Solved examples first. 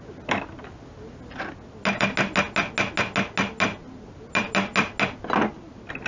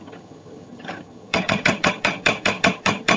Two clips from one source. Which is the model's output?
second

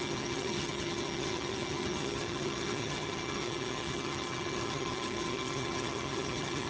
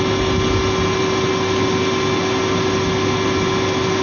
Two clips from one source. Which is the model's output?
first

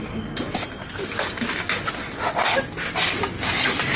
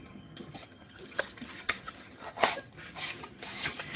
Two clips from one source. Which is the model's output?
second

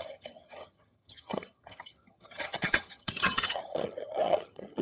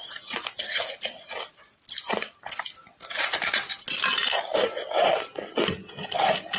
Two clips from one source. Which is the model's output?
first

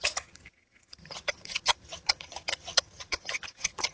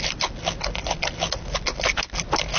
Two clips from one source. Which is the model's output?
first